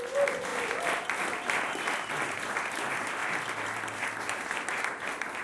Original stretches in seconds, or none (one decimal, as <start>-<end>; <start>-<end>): 0.0-5.4

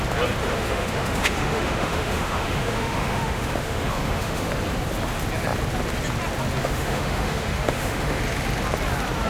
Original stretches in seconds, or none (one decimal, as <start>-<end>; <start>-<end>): 0.0-0.4; 4.5-6.6; 8.2-9.3

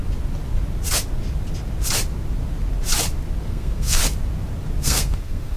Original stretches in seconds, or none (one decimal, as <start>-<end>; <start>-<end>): 0.0-3.4; 4.0-4.8